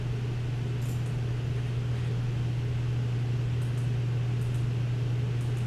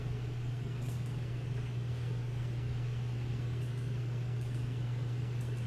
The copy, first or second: second